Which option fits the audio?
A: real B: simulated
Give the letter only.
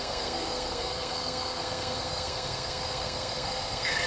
B